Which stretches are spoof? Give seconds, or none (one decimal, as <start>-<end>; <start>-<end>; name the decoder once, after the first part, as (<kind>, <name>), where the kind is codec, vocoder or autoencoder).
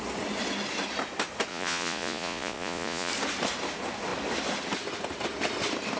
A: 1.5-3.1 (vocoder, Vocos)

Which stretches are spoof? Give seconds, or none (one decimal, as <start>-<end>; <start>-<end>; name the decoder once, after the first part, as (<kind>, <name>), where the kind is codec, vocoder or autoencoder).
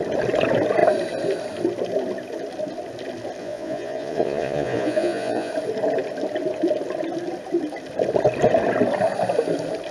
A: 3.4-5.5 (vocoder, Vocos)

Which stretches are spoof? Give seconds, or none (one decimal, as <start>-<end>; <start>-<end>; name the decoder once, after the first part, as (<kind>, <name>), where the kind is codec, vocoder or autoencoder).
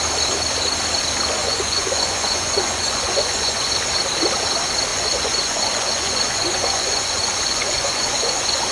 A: 1.4-3.7 (vocoder, Vocos); 4.9-8.7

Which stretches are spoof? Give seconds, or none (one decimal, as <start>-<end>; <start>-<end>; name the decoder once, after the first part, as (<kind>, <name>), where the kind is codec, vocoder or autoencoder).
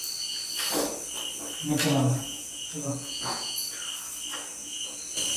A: 2.2-3.7 (vocoder, Vocos); 4.5-5.0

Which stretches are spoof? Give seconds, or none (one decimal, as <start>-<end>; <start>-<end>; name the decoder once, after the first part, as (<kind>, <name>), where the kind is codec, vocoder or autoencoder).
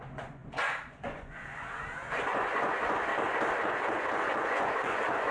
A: 0.0-3.1 (vocoder, Vocos); 3.6-5.3